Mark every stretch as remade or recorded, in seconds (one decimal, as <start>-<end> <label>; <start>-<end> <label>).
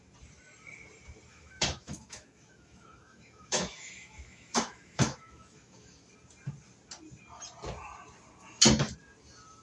0.0-1.3 recorded; 1.3-6.0 remade; 6.0-9.6 recorded